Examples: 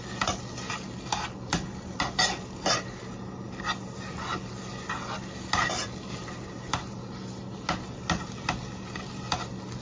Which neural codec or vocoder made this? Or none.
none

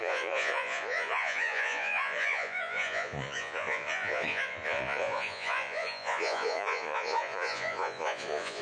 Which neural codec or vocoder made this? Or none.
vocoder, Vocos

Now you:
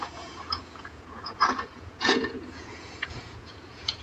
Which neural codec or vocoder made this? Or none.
vocoder, Vocos